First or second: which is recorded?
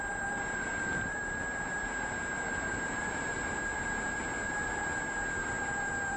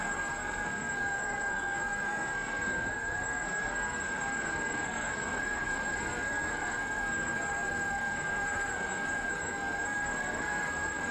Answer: first